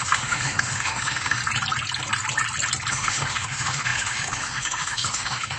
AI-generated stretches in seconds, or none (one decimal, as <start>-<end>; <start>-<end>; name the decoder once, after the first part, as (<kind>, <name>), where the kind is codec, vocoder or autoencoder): 0.0-1.4 (autoencoder, DAC-VAE); 2.9-5.6